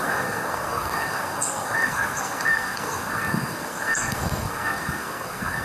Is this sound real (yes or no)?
no